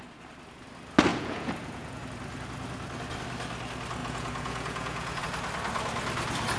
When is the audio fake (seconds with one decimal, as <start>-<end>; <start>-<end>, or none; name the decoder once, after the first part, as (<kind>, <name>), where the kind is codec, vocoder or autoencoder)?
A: 1.1-2.0 (vocoder, Vocos); 4.0-5.2